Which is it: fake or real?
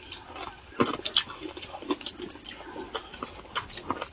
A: real